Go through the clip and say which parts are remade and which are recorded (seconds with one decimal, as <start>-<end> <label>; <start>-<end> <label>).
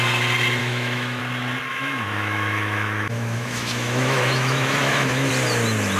0.0-0.6 recorded; 0.6-1.2 remade; 1.2-1.7 recorded; 1.7-5.3 remade; 5.3-6.0 recorded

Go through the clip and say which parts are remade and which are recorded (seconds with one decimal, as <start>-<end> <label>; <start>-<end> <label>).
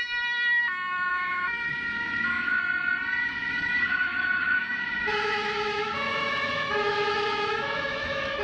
0.0-1.1 recorded; 1.1-2.6 remade; 2.6-3.2 recorded; 3.2-8.4 remade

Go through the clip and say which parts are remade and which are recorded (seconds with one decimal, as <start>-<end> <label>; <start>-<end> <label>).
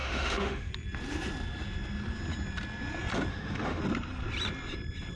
0.0-0.7 remade; 0.7-3.3 recorded; 3.3-3.8 remade; 3.8-5.2 recorded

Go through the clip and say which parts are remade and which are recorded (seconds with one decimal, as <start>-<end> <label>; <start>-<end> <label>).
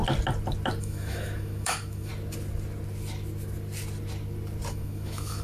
0.0-0.8 recorded; 0.8-2.1 remade; 2.1-4.7 recorded; 4.7-5.4 remade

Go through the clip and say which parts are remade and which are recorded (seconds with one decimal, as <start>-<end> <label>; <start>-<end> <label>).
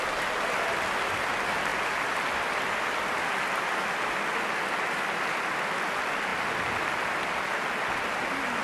0.0-8.6 recorded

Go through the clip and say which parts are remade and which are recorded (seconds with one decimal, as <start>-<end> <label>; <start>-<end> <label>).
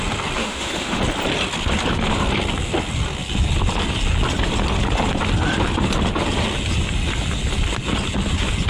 0.0-0.4 recorded; 0.4-1.0 remade; 1.0-8.7 recorded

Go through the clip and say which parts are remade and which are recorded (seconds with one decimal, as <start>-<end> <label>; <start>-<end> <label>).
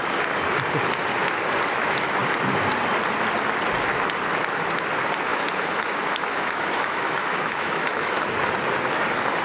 0.0-5.3 recorded; 5.3-8.2 remade; 8.2-9.4 recorded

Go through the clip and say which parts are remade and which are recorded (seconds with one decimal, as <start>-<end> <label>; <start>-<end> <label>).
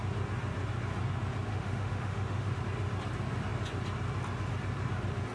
0.0-1.5 recorded; 1.5-2.6 remade; 2.6-5.3 recorded